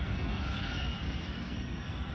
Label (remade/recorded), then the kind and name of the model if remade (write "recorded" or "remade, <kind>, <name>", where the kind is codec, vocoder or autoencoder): remade, codec, SNAC